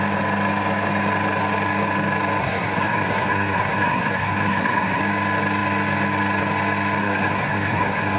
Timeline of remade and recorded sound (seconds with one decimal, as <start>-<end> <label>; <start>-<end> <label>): 0.0-2.4 recorded; 2.4-5.0 remade; 5.0-7.0 recorded; 7.0-8.2 remade